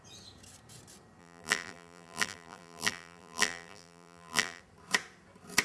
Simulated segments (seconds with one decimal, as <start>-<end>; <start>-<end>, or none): 1.2-4.6